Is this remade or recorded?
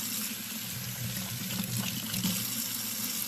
recorded